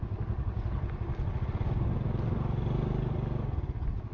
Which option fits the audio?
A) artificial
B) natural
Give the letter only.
B